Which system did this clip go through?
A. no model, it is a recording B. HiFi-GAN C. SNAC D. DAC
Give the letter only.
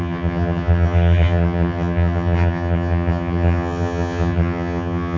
B